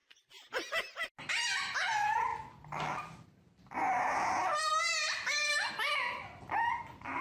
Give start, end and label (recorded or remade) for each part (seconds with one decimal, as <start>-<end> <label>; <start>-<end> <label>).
0.0-7.2 recorded